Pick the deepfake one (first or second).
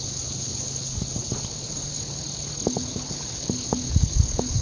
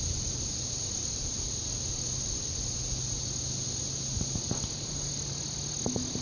first